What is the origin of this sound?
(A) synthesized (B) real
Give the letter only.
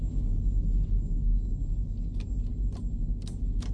B